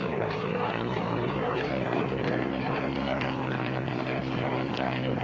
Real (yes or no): no